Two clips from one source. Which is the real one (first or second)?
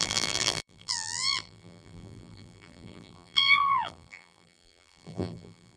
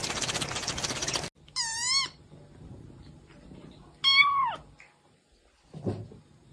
second